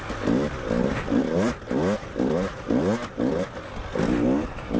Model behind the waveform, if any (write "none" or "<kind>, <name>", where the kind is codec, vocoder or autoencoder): none